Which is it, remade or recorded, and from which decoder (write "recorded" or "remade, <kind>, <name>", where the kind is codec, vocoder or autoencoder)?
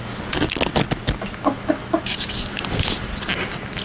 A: recorded